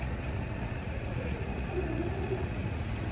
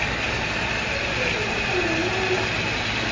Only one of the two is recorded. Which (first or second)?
second